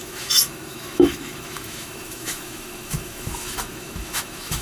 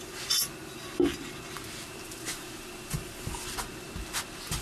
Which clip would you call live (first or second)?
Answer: second